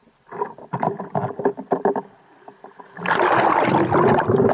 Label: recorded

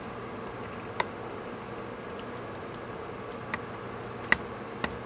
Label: recorded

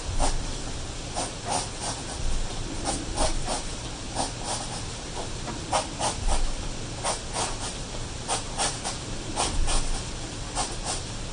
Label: recorded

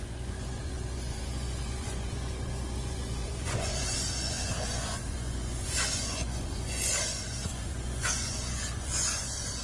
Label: remade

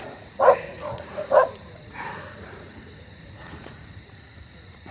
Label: remade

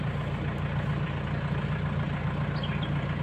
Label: recorded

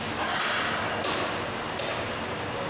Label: recorded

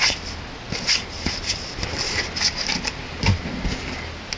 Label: recorded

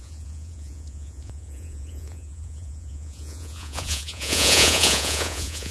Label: remade